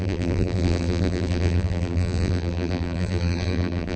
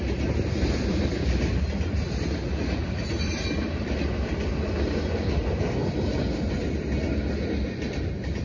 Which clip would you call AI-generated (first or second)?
first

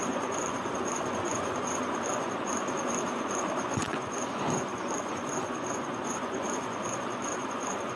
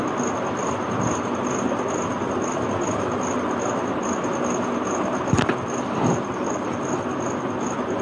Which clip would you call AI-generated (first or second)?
first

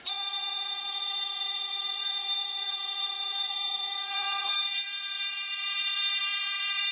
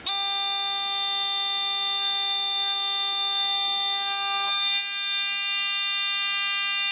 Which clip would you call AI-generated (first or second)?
first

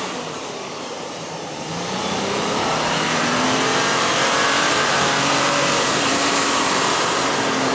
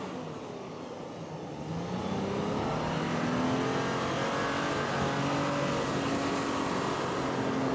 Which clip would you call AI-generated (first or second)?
first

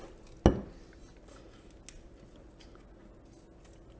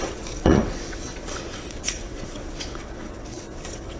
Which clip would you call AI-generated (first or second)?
second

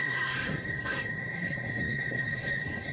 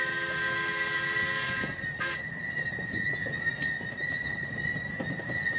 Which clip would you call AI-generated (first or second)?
first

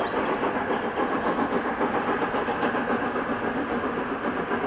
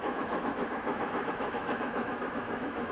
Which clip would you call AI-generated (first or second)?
second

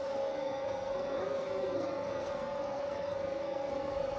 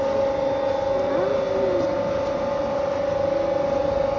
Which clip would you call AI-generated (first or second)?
first